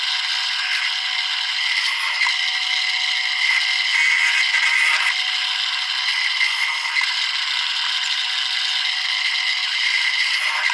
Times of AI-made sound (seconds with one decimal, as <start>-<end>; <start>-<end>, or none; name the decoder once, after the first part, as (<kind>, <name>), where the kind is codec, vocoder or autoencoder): 9.6-10.1 (vocoder, BigVGAN v2)